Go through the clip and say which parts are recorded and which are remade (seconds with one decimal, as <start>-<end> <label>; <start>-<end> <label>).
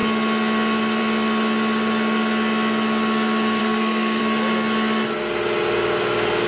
0.0-3.6 recorded; 3.6-4.2 remade; 4.2-6.5 recorded